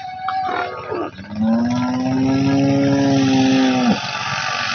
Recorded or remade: recorded